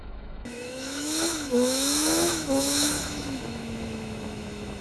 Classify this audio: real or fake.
fake